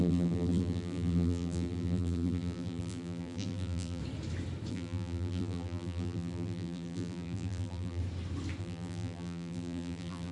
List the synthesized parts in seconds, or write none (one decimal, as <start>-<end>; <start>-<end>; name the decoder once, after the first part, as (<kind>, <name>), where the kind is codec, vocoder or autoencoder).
0.0-4.0 (vocoder, BigVGAN v2); 4.7-8.0; 8.6-10.3